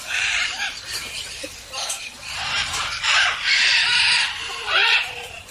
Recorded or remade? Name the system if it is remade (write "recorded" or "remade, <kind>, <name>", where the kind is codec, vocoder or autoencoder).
remade, vocoder, BigVGAN v2